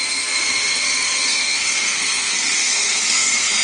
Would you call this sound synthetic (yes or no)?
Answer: yes